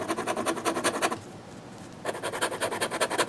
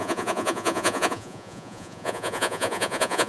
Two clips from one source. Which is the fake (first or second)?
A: second